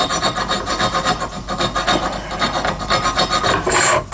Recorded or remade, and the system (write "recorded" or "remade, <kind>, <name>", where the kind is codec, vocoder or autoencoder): recorded